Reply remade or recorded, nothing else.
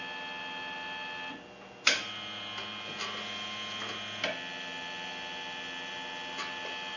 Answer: recorded